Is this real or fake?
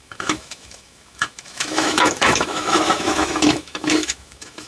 fake